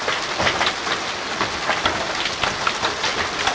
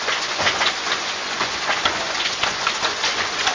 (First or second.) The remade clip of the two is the second